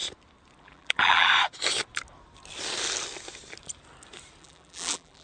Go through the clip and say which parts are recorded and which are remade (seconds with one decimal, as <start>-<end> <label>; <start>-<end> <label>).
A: 0.0-0.6 recorded; 0.6-1.3 remade; 1.3-4.4 recorded; 4.4-5.2 remade